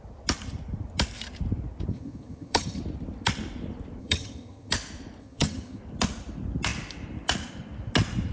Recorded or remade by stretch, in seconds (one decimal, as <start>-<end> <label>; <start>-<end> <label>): 0.0-1.9 recorded; 1.9-2.8 remade; 2.8-4.0 recorded; 4.0-4.7 remade; 4.7-5.2 recorded; 5.2-5.8 remade; 5.8-8.3 recorded

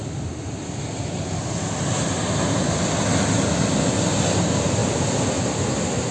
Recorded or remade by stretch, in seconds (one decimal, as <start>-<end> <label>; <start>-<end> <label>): 0.0-6.1 recorded

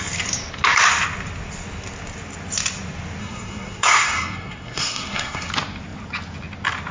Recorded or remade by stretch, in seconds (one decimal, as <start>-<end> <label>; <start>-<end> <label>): 0.0-3.2 recorded; 3.2-5.5 remade; 5.5-6.9 recorded

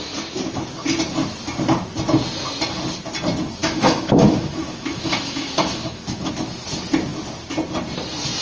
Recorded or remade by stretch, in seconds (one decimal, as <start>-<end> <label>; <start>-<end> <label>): 0.0-3.6 recorded; 3.6-6.3 remade; 6.3-8.4 recorded

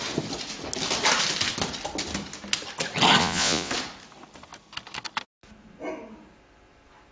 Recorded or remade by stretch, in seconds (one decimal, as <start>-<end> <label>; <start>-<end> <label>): 0.0-3.2 recorded; 3.2-3.7 remade; 3.7-7.1 recorded

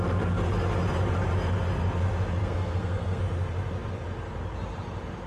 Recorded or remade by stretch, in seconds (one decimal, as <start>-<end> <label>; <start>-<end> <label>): 0.0-2.4 recorded; 2.4-3.2 remade; 3.2-5.3 recorded